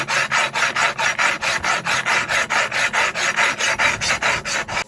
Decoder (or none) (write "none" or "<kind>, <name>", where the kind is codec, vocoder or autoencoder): none